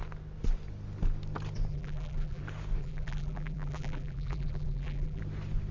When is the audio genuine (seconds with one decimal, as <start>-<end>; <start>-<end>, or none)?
0.0-1.7; 2.4-2.8; 5.2-5.7